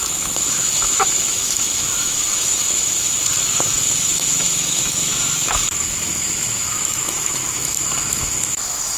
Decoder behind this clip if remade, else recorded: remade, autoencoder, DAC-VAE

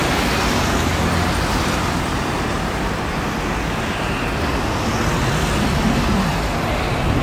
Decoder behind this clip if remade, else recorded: recorded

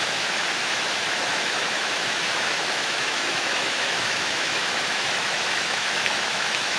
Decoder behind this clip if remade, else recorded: remade, autoencoder, DAC-VAE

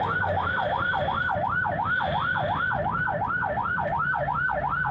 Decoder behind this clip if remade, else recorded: recorded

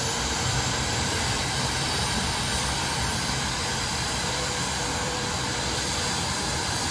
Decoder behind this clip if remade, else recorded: remade, vocoder, BigVGAN v2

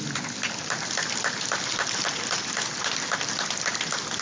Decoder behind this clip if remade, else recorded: recorded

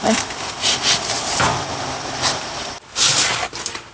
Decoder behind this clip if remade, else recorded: recorded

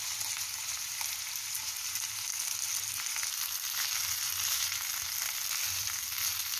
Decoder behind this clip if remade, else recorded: recorded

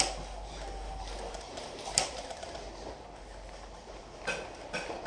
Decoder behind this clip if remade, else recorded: recorded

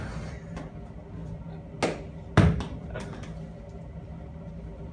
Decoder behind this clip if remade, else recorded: recorded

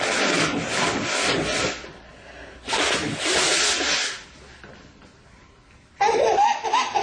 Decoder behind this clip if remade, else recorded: recorded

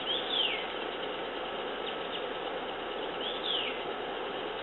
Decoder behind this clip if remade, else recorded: recorded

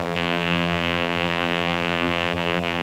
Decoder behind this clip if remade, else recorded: remade, vocoder, BigVGAN v2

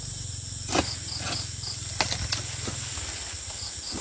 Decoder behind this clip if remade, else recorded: recorded